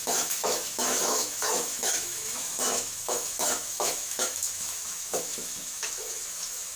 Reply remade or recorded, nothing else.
remade